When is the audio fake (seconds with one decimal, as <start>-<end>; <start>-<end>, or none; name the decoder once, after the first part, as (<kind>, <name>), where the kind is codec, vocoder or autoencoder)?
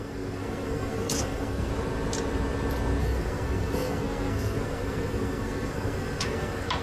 0.0-1.7 (codec, SNAC); 3.0-6.8